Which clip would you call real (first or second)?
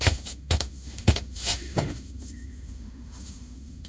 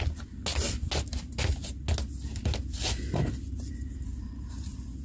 second